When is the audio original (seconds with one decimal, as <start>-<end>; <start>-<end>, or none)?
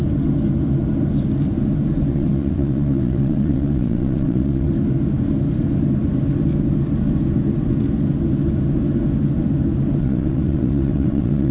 0.0-2.1; 4.7-10.0